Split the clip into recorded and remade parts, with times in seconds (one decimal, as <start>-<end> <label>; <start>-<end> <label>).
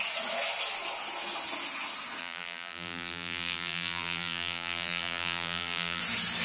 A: 0.0-2.2 recorded; 2.2-6.0 remade; 6.0-6.4 recorded